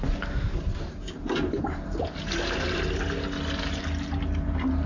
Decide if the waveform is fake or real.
real